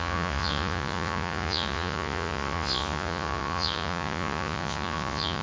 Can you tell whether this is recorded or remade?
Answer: remade